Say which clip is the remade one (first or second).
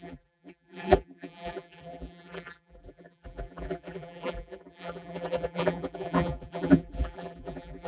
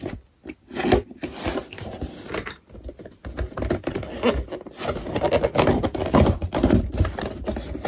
first